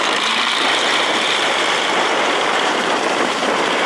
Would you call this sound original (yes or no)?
no